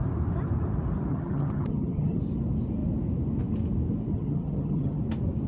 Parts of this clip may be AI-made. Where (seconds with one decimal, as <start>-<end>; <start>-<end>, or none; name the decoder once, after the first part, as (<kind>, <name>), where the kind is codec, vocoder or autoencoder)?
1.1-2.2 (vocoder, HiFi-GAN); 4.1-5.0